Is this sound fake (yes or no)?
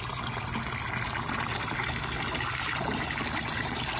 no